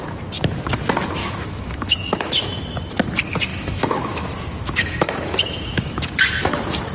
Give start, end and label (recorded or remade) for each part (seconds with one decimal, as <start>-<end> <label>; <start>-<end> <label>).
0.0-1.2 recorded; 1.2-2.3 remade; 2.3-3.5 recorded; 3.5-6.4 remade; 6.4-6.9 recorded